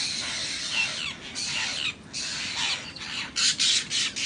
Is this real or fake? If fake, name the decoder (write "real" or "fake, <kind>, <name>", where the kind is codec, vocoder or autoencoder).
real